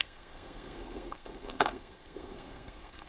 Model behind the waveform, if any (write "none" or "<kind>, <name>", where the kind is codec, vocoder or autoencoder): codec, SNAC